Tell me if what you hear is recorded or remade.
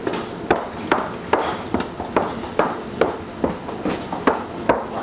recorded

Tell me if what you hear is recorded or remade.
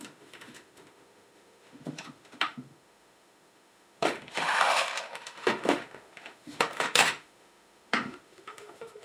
remade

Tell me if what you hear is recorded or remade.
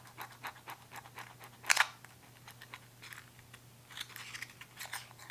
recorded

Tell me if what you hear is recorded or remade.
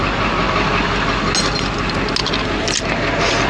recorded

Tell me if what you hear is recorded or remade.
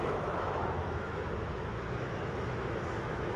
remade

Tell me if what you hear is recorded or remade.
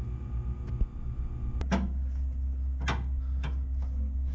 recorded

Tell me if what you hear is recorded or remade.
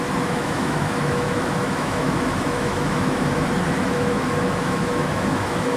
remade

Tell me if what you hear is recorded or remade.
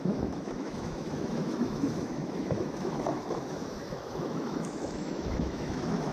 remade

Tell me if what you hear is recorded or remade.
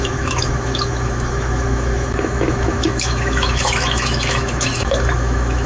remade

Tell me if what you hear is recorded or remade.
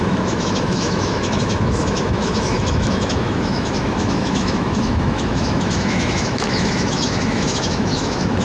remade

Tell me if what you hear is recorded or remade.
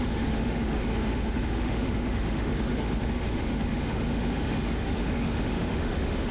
remade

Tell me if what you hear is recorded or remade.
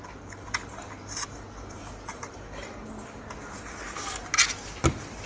recorded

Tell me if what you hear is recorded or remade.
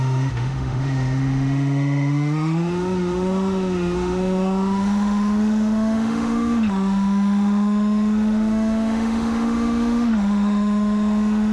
remade